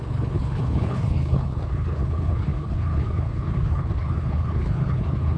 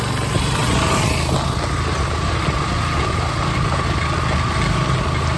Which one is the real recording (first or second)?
second